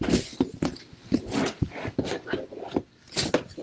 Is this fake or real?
real